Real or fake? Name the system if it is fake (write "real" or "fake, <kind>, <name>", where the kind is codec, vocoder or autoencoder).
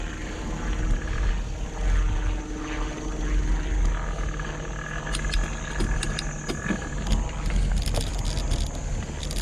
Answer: real